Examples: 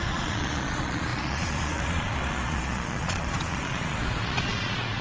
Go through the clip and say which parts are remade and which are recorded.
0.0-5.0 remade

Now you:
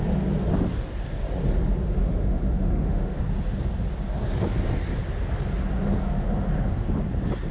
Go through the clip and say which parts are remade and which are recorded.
0.0-2.0 recorded; 2.0-3.2 remade; 3.2-7.5 recorded

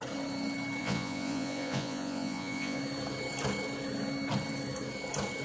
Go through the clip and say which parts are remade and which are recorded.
0.0-0.8 recorded; 0.8-2.8 remade; 2.8-5.4 recorded

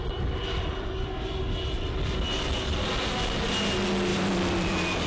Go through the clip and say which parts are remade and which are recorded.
0.0-3.1 remade; 3.1-4.1 recorded; 4.1-5.1 remade

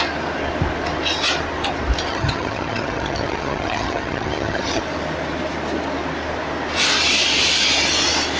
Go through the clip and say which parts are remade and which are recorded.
0.0-2.1 recorded; 2.1-4.8 remade; 4.8-8.4 recorded

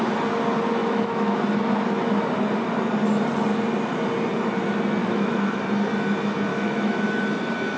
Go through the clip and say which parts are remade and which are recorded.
0.0-0.8 recorded; 0.8-1.4 remade; 1.4-5.0 recorded; 5.0-5.6 remade; 5.6-6.5 recorded; 6.5-7.2 remade; 7.2-7.8 recorded

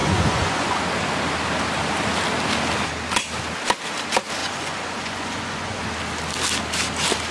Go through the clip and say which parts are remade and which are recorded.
0.0-0.8 remade; 0.8-4.4 recorded; 4.4-5.8 remade; 5.8-7.3 recorded